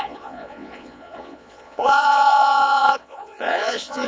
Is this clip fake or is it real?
fake